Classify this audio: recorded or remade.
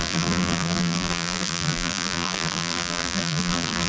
remade